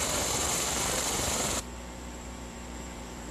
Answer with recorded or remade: remade